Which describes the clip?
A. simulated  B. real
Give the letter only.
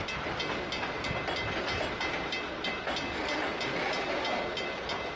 B